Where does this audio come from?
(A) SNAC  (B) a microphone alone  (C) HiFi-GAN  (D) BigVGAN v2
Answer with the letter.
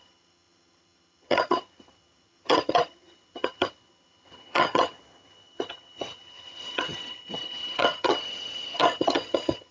C